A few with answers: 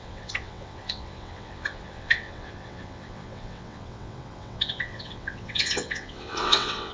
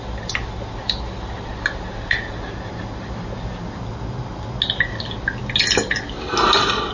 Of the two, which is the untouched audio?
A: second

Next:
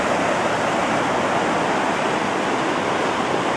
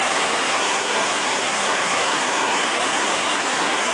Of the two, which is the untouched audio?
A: first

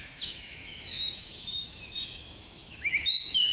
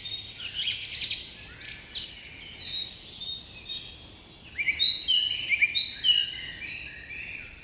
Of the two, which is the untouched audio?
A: second